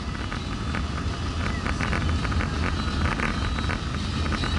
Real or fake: real